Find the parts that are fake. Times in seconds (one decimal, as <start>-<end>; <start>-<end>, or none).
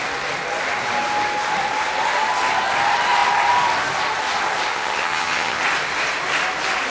4.7-5.6